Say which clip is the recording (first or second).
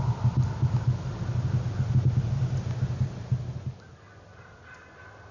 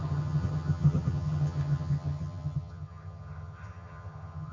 first